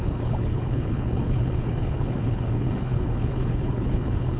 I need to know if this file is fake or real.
fake